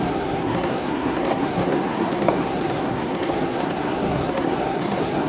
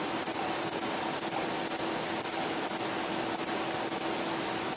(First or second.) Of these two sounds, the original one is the second